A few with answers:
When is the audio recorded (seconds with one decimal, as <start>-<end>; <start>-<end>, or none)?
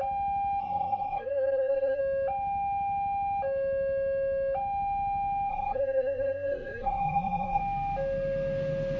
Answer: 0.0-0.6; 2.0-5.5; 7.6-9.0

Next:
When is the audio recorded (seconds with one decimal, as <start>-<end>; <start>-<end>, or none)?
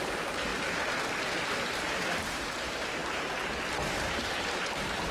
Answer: 0.5-1.5; 3.0-3.7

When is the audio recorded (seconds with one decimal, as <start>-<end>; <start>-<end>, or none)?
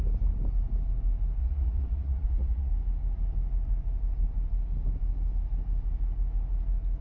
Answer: 0.0-1.4; 2.7-7.0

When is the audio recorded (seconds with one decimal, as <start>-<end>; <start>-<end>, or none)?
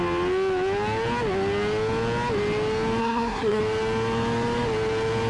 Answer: 0.0-3.0; 3.6-5.3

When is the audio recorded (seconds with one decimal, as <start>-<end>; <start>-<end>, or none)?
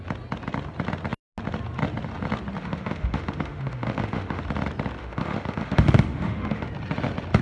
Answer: 0.0-2.6; 4.4-5.0; 6.7-7.4